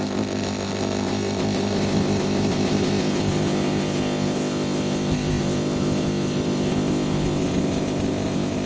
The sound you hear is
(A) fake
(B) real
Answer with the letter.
A